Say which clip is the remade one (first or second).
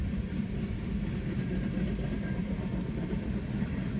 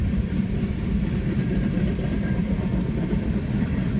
second